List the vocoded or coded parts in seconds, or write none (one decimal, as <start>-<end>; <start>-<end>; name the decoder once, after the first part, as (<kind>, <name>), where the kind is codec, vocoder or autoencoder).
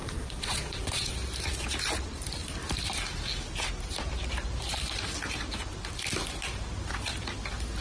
0.0-1.1 (vocoder, Vocos)